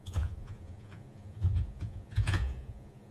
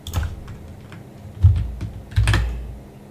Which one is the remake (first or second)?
first